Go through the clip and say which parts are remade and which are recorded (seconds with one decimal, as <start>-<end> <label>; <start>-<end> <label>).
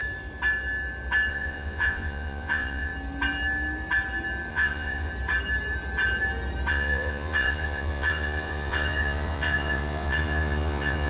0.0-1.3 recorded; 1.3-2.9 remade; 2.9-4.5 recorded; 4.5-5.1 remade; 5.1-6.7 recorded; 6.7-11.1 remade